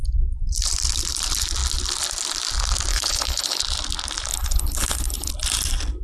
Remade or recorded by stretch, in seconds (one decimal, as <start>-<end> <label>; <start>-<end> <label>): 0.0-2.9 recorded; 2.9-3.6 remade; 3.6-4.3 recorded; 4.3-5.3 remade; 5.3-6.0 recorded